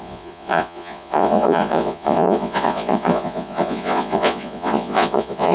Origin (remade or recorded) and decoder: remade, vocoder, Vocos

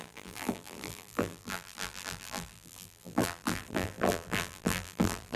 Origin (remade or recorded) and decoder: remade, vocoder, BigVGAN v2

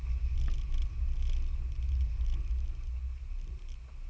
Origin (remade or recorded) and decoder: recorded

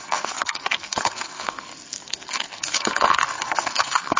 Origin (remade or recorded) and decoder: remade, codec, SNAC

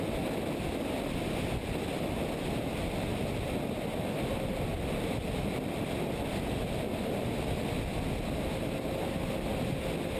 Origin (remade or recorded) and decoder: recorded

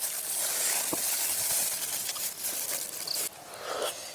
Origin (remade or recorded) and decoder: recorded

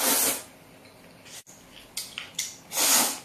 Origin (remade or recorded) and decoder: recorded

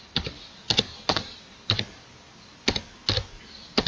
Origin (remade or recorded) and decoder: recorded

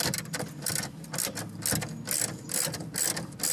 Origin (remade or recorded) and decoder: recorded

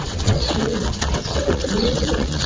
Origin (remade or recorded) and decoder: remade, vocoder, WaveNeXt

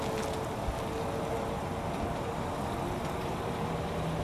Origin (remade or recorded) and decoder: recorded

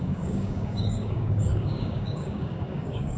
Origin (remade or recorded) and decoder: remade, codec, DAC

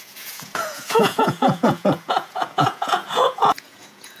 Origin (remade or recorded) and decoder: remade, vocoder, Vocos